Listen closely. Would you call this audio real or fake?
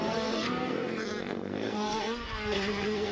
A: fake